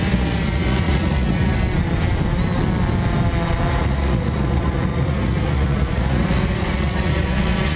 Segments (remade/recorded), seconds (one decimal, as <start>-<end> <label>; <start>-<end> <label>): 0.0-1.6 remade; 1.6-3.7 recorded; 3.7-7.8 remade